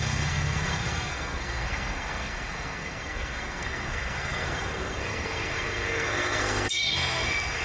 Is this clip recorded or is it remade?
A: remade